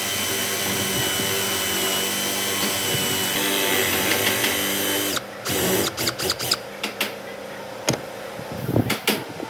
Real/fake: real